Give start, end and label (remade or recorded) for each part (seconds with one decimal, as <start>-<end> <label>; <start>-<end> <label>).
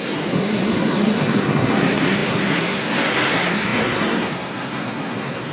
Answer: 0.0-5.5 remade